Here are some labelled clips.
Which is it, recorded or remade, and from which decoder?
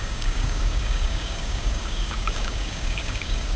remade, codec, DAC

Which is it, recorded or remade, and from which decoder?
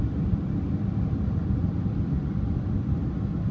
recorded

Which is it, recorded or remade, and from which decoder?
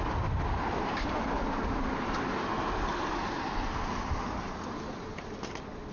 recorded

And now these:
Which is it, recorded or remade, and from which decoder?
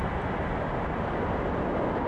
recorded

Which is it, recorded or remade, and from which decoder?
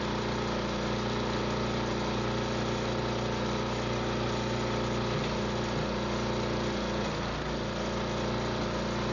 recorded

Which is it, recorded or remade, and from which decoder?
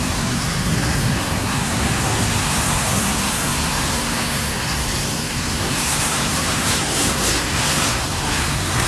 remade, codec, SNAC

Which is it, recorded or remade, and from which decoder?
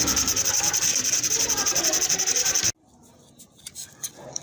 recorded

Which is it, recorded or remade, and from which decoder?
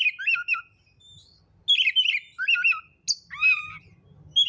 recorded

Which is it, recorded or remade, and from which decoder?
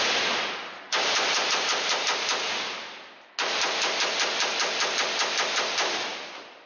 recorded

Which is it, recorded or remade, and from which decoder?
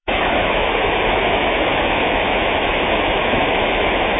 remade, autoencoder, DAC-VAE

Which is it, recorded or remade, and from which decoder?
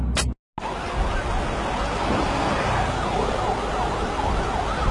recorded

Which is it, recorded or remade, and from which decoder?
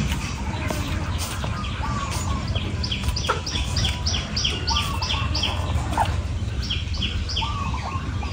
recorded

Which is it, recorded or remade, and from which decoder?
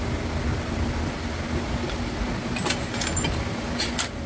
recorded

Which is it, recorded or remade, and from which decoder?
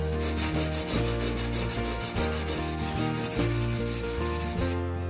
recorded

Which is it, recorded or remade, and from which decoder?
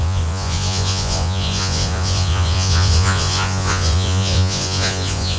remade, vocoder, Vocos